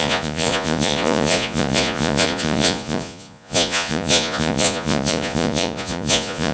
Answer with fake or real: fake